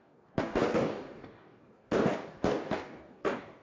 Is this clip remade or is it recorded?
remade